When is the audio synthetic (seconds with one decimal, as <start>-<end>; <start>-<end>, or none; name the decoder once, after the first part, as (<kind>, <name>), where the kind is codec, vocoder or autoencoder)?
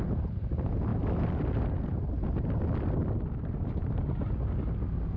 none